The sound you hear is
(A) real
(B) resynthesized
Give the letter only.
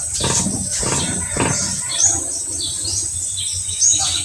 B